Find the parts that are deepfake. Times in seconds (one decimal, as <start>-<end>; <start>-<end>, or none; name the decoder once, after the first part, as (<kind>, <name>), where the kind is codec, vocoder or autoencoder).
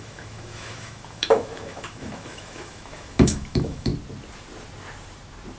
0.0-3.9 (autoencoder, DAC-VAE)